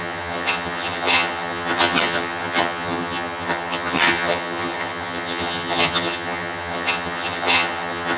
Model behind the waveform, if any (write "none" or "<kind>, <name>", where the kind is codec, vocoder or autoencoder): vocoder, HiFi-GAN